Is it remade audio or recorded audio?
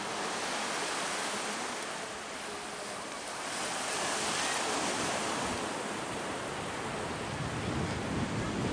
recorded